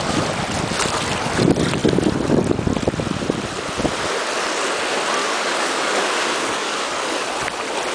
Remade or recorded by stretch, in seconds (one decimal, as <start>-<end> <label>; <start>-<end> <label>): 0.0-5.2 recorded; 5.2-7.3 remade; 7.3-7.9 recorded